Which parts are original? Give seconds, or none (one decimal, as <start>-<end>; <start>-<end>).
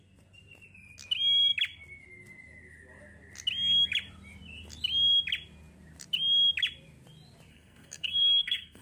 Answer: 0.0-7.5